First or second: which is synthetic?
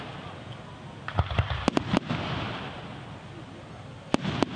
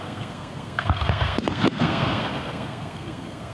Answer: second